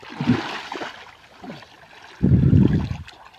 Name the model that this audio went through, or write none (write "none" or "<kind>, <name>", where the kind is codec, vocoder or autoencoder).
none